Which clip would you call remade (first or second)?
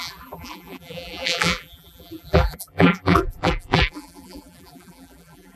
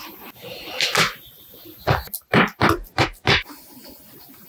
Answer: first